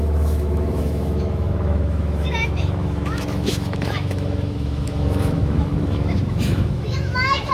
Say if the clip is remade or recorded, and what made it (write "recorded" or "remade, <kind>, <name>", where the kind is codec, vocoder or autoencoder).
remade, autoencoder, DAC-VAE